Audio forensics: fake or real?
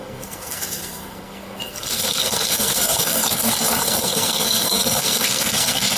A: fake